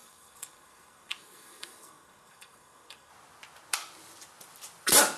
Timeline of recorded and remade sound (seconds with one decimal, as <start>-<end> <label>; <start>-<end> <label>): 0.0-3.1 remade; 3.1-5.2 recorded